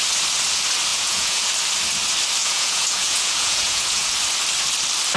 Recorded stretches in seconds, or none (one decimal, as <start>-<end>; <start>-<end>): 0.0-0.9; 1.5-2.4; 4.1-5.2